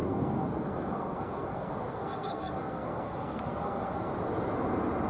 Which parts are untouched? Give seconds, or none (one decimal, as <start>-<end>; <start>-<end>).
4.1-5.1

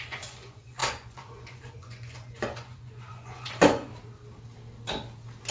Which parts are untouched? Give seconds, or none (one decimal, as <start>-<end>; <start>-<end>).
3.9-5.5

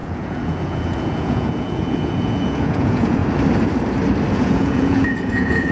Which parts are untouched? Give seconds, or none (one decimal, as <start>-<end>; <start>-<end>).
3.2-4.3